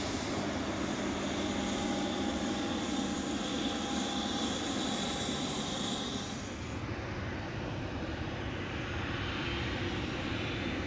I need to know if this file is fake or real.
real